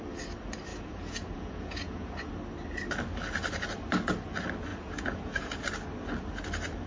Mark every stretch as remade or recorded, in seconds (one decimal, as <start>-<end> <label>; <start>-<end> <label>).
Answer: 0.0-0.7 recorded; 0.7-2.3 remade; 2.3-4.7 recorded; 4.7-5.6 remade; 5.6-6.9 recorded